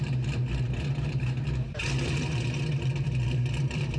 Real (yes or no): no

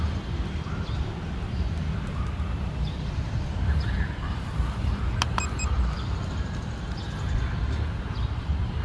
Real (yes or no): no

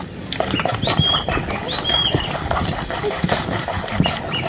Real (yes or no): yes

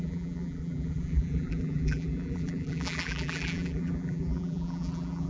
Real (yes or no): no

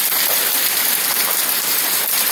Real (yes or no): no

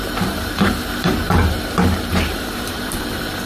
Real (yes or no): no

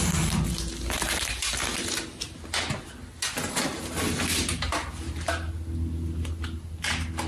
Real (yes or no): yes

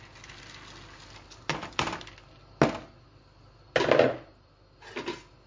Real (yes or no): yes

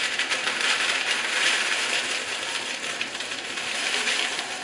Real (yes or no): no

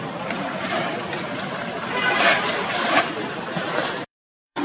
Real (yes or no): no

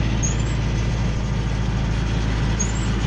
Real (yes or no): yes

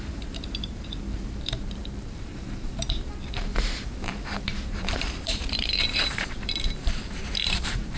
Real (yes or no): no